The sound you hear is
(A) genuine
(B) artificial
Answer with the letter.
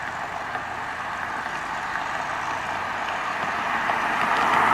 A